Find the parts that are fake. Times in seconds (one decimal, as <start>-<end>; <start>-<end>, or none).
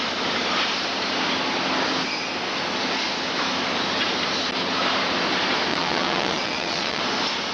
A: 5.7-7.0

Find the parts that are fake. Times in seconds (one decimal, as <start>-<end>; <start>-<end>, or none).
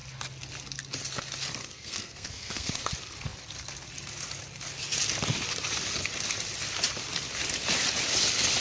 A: 1.6-2.8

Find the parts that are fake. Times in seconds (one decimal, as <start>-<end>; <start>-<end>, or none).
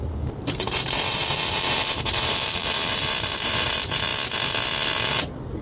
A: 0.0-4.1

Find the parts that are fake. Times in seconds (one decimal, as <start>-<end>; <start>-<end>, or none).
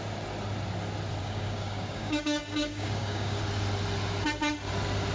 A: 1.2-3.4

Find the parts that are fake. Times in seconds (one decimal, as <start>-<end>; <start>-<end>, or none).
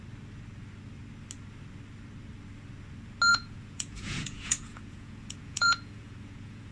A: 3.3-6.7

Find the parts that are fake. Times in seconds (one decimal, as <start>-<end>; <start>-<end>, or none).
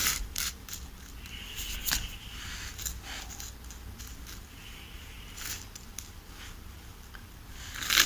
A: none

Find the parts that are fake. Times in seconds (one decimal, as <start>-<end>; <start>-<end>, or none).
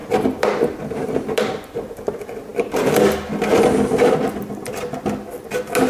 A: none